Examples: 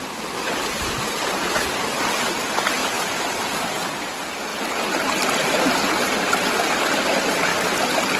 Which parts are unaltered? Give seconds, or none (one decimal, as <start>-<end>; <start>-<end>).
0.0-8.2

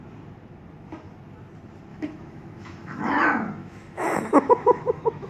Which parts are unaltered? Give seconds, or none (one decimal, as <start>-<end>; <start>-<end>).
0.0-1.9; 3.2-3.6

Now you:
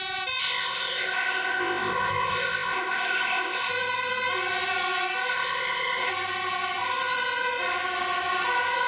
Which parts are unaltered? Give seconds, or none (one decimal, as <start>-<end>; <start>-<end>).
0.0-0.4; 3.7-5.3; 6.1-8.9